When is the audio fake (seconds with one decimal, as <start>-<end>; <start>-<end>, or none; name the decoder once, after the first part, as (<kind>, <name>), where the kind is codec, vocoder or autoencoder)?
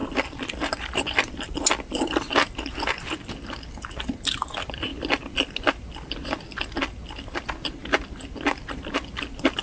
none